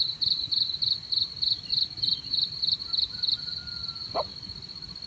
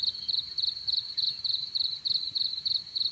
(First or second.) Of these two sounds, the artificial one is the second